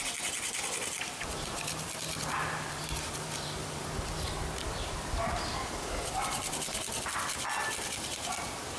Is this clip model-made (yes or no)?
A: no